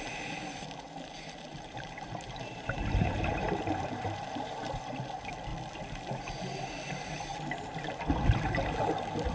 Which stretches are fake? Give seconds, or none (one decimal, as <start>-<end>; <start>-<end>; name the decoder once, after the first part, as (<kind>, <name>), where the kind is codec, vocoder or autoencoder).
1.5-4.8 (vocoder, BigVGAN v2)